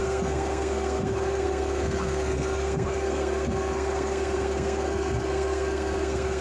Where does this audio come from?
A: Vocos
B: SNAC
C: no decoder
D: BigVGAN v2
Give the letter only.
B